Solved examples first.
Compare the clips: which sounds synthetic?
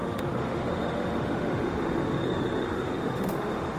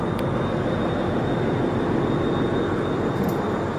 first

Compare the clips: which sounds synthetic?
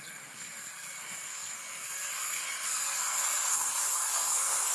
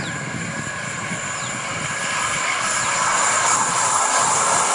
first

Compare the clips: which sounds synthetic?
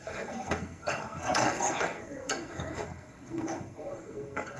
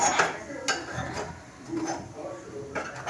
first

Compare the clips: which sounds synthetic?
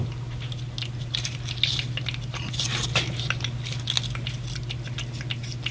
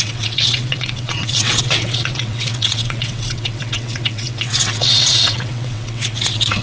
second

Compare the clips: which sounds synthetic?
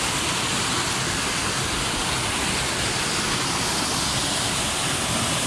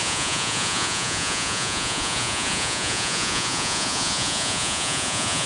second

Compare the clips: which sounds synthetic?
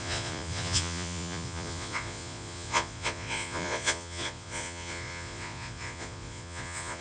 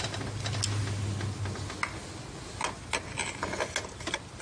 first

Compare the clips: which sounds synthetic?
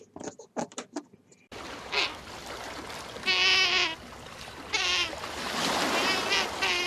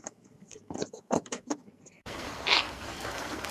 second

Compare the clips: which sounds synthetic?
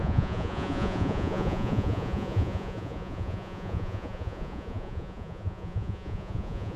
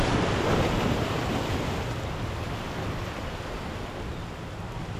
first